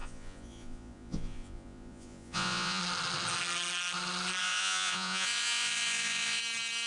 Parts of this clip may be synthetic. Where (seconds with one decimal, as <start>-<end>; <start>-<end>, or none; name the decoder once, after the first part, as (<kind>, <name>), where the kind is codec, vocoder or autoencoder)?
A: 0.0-2.8 (vocoder, Vocos); 4.4-6.4